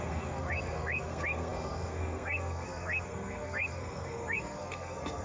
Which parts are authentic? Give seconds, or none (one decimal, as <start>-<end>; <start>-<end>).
none